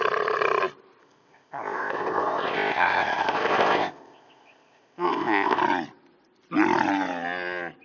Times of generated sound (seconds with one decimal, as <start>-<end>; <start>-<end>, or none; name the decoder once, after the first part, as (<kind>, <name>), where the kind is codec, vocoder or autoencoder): 1.0-5.6 (codec, ZipCodec)